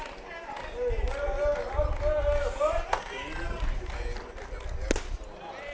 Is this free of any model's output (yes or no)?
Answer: yes